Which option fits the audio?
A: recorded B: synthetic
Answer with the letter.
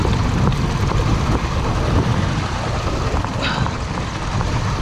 B